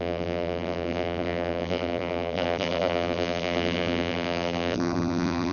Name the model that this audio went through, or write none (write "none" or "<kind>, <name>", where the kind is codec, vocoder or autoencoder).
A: vocoder, BigVGAN v2